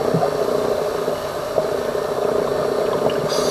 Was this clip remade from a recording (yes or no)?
yes